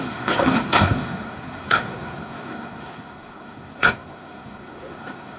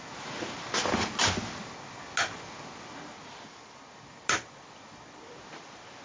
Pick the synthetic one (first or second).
first